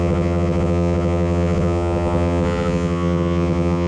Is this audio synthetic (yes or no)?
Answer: yes